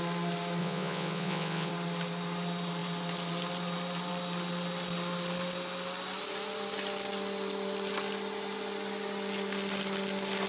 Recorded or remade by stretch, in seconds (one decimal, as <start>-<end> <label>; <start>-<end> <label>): 0.0-0.6 recorded; 0.6-1.7 remade; 1.7-10.5 recorded